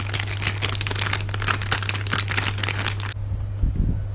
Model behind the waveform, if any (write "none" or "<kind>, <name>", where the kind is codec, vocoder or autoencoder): none